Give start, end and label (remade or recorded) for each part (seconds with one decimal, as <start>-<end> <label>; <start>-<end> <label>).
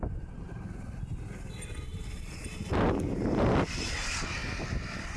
0.0-5.2 recorded